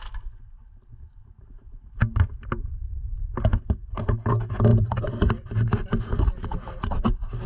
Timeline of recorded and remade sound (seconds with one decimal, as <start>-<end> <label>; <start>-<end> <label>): 0.0-2.7 recorded; 2.7-4.0 remade; 4.0-4.7 recorded; 4.7-7.5 remade

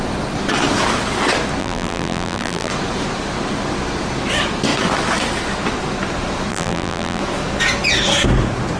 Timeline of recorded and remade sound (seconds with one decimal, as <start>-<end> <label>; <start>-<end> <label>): 0.0-1.6 recorded; 1.6-2.7 remade; 2.7-6.5 recorded; 6.5-7.2 remade; 7.2-8.8 recorded

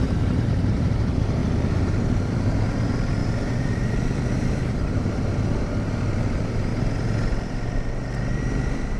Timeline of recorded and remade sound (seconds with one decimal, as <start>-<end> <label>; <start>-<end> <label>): 0.0-1.4 remade; 1.4-2.3 recorded; 2.3-6.7 remade; 6.7-9.0 recorded